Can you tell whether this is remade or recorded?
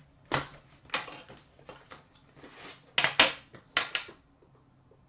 recorded